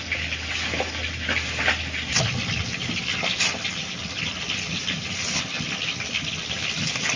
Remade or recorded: recorded